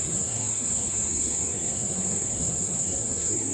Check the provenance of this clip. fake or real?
fake